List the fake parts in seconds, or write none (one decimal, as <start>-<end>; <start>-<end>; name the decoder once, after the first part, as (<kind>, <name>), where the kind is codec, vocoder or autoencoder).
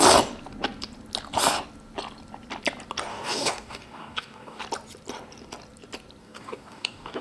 3.1-4.6 (codec, DAC); 6.2-7.2